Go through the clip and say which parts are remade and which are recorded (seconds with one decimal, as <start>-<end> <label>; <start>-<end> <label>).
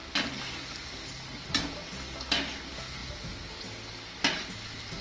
0.0-5.0 recorded